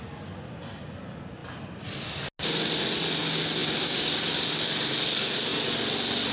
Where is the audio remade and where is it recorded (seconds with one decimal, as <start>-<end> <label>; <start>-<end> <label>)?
0.0-3.6 recorded; 3.6-4.5 remade; 4.5-6.3 recorded